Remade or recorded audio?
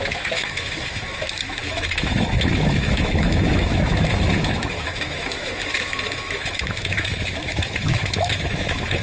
remade